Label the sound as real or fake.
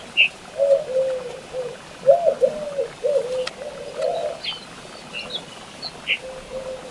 real